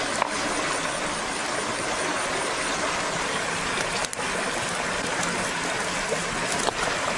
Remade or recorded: recorded